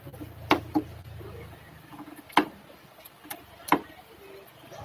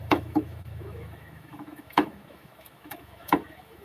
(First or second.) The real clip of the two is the first